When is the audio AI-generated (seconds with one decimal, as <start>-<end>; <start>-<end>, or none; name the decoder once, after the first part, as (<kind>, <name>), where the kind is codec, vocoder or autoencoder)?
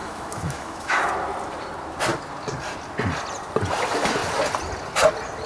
0.0-1.1 (autoencoder, DAC-VAE)